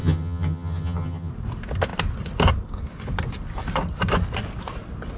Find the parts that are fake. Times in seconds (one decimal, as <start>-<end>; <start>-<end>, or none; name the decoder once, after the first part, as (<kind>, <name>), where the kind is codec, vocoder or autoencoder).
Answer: 0.0-1.3 (vocoder, HiFi-GAN)